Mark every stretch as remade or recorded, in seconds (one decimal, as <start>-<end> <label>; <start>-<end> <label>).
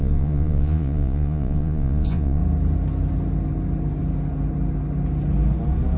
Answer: 0.0-2.4 remade; 2.4-6.0 recorded